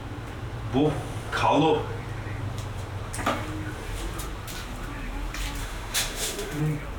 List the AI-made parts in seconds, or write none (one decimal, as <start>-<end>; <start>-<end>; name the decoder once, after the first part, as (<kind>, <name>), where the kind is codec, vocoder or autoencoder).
5.6-6.6 (autoencoder, DAC-VAE)